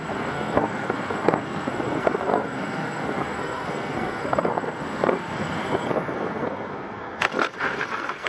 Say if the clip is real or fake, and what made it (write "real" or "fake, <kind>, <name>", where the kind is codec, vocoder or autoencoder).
fake, codec, SNAC